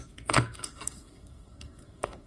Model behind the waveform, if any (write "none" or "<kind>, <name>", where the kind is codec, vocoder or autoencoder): codec, SNAC